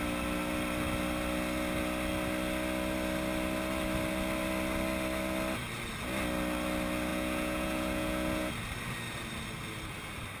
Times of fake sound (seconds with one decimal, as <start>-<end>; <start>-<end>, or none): 7.1-8.5